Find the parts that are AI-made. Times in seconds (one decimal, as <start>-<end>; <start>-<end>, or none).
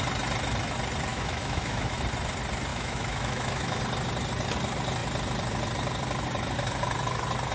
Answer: 1.1-2.0; 2.7-3.8